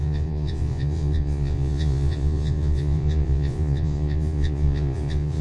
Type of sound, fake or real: fake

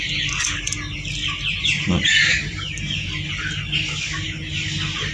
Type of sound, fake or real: real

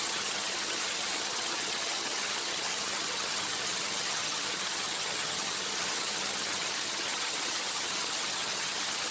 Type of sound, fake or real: fake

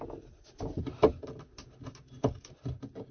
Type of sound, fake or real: real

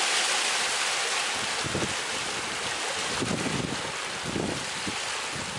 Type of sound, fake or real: real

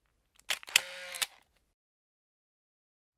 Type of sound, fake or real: real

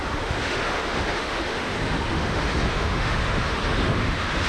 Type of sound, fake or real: fake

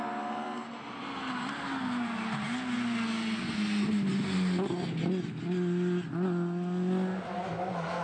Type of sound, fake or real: real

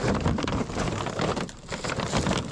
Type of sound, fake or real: fake